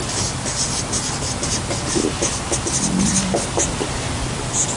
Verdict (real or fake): real